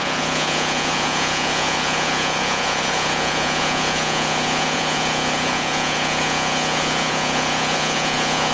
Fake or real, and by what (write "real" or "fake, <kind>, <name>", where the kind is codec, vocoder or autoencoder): fake, vocoder, Vocos